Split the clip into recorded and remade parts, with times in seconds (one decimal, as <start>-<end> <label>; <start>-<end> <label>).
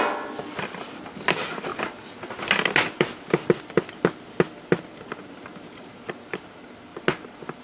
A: 0.0-7.6 recorded